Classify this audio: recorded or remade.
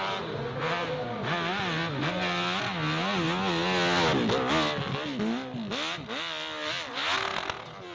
recorded